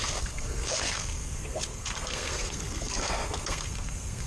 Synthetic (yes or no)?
yes